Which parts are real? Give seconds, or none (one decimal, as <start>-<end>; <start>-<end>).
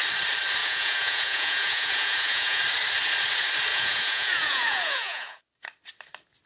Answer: 0.0-0.6; 2.6-3.7; 5.4-6.5